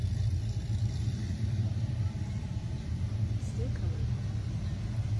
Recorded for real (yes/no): no